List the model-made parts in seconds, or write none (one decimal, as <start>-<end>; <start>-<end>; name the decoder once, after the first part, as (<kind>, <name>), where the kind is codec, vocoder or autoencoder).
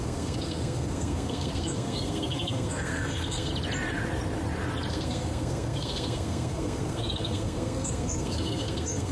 0.0-3.5 (codec, SNAC); 4.9-9.1